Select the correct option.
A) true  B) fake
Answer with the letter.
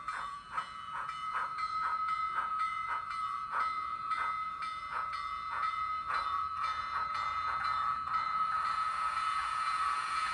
B